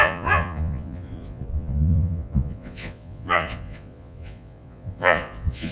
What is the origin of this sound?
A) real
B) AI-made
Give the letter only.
B